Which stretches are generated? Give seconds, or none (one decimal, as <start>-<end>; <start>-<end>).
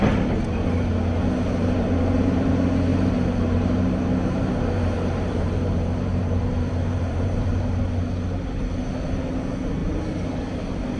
1.6-2.5; 2.9-7.8